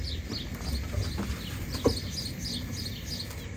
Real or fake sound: real